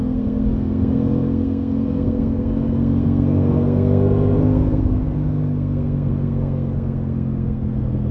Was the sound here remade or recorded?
remade